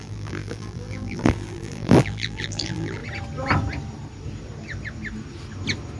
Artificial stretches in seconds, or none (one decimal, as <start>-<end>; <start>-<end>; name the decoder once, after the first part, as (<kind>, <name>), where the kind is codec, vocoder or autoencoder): 0.0-3.0 (vocoder, BigVGAN v2)